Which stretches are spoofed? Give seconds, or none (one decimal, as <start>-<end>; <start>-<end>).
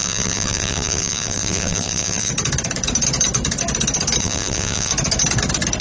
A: 0.0-2.3; 4.2-4.9